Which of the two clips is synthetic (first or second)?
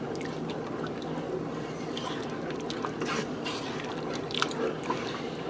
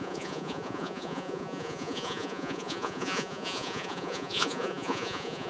second